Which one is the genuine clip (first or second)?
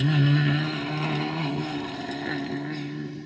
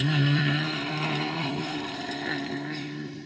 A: first